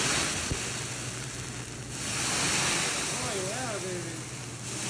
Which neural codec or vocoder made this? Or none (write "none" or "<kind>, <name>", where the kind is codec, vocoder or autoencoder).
none